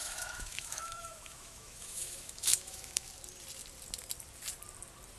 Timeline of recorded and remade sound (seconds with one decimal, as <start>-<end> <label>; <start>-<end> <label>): 0.0-3.1 remade; 3.1-5.2 recorded